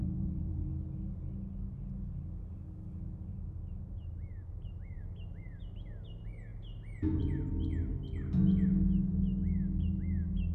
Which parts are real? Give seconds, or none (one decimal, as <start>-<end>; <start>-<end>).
0.7-3.3; 5.0-10.5